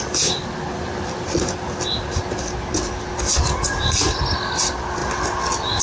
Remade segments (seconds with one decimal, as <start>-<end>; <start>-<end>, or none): none

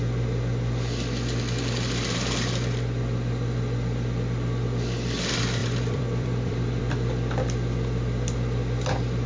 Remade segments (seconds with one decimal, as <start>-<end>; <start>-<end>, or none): 5.6-6.8